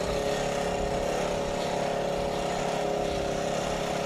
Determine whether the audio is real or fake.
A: real